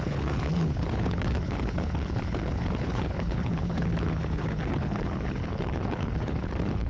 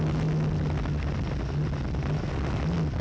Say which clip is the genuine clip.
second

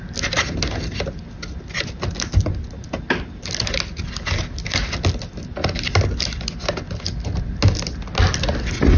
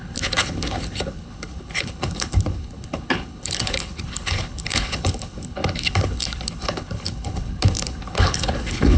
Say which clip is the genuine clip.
first